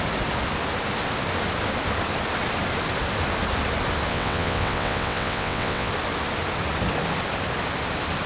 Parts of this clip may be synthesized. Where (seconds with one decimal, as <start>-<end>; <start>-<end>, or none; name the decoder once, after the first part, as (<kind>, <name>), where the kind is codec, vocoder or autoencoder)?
4.1-5.9 (vocoder, WaveNeXt)